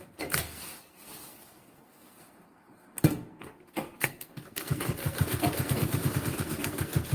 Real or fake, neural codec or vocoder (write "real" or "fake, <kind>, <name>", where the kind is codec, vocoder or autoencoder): fake, codec, SNAC